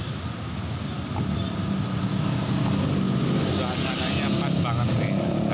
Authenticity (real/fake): real